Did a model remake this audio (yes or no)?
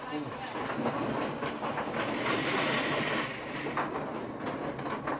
no